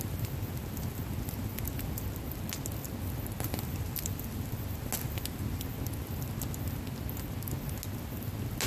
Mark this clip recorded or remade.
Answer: recorded